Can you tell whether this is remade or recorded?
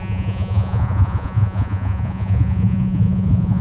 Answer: remade